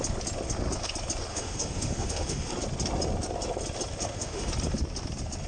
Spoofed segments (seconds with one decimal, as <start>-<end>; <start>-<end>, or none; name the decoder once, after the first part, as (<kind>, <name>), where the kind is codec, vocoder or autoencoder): 1.3-2.5 (autoencoder, DAC-VAE); 4.0-4.5